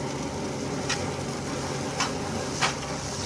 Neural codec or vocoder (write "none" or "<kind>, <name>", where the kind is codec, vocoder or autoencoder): none